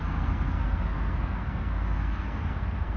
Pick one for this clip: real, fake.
fake